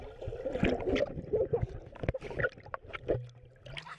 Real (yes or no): yes